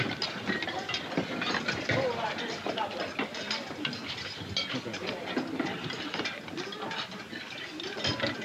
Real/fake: real